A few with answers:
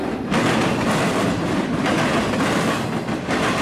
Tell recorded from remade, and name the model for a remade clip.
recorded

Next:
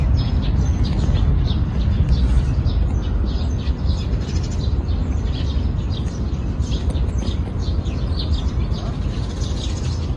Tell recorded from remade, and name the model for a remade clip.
recorded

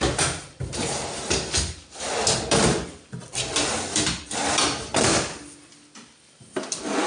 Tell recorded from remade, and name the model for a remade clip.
remade, vocoder, BigVGAN v2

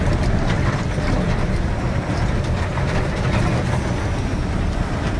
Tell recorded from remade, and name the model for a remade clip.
remade, vocoder, BigVGAN v2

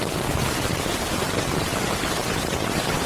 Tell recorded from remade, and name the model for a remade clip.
recorded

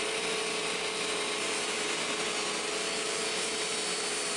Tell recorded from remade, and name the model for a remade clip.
recorded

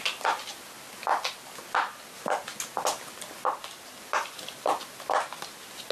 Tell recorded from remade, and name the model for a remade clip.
recorded